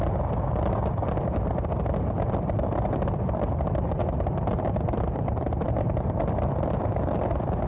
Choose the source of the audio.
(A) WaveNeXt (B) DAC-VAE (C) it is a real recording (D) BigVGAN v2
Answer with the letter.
C